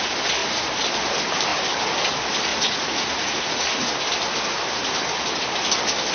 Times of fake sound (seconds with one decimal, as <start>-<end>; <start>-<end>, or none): 2.5-3.9

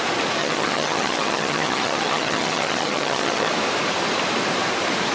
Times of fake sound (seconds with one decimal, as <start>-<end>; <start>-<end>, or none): 0.4-3.5

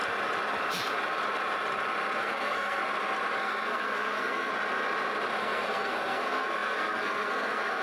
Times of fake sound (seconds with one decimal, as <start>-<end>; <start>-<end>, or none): 2.2-2.8; 3.4-4.5; 5.4-7.8